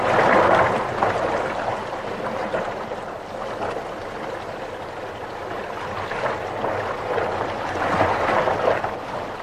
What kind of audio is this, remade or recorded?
recorded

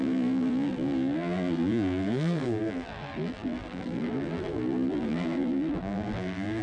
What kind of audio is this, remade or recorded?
remade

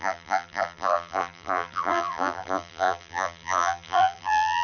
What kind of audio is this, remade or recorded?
remade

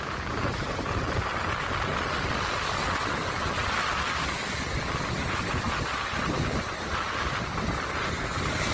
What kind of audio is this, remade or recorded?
recorded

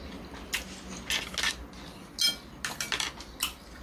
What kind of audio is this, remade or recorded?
recorded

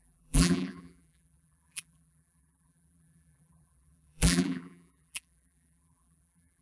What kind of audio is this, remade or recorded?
remade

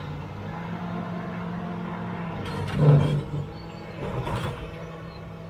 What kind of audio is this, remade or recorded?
recorded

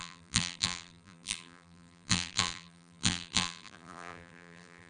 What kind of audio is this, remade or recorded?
remade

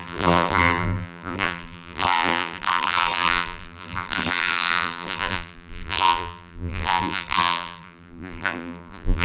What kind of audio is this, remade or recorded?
remade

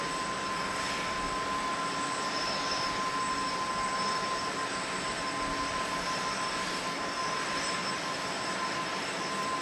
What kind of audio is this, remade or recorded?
recorded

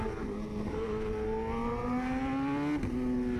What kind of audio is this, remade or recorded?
recorded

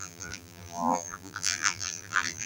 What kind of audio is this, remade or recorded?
remade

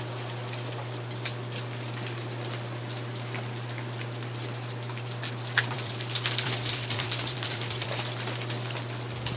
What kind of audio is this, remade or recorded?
remade